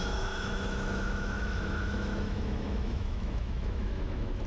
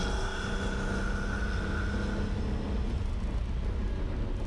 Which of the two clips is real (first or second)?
second